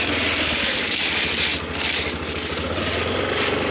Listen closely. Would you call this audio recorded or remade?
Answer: recorded